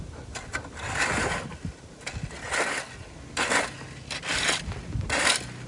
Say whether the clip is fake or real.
real